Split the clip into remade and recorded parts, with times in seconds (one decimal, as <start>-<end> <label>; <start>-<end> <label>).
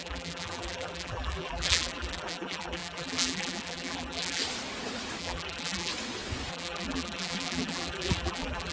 0.0-4.4 remade; 4.4-5.2 recorded; 5.2-5.9 remade; 5.9-6.5 recorded; 6.5-8.7 remade